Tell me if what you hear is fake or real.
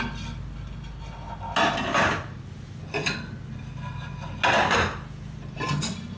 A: real